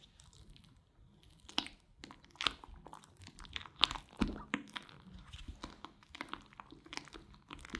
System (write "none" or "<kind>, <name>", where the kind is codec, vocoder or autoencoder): none